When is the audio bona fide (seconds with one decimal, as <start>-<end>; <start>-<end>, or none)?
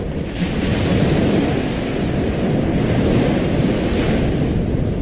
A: 0.0-5.0